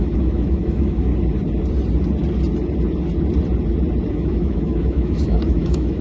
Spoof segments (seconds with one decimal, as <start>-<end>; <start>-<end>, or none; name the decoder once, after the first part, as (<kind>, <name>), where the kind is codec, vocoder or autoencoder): 0.0-1.1 (autoencoder, DAC-VAE); 4.1-6.0